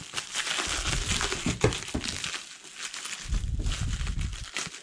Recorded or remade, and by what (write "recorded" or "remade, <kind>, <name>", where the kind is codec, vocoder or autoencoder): recorded